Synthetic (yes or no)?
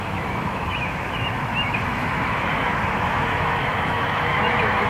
yes